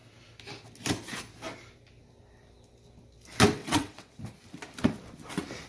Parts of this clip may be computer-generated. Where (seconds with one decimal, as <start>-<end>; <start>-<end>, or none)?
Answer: 3.6-4.2